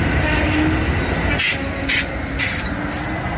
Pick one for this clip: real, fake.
real